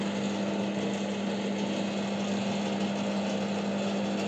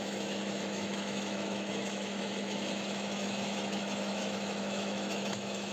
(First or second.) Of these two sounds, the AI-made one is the second